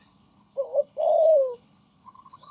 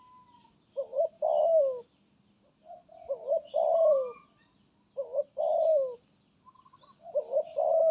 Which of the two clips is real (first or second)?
second